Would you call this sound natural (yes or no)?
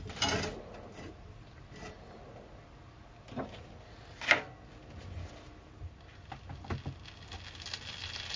yes